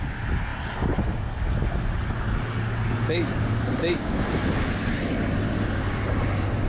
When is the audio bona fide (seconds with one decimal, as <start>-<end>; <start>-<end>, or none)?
0.0-6.7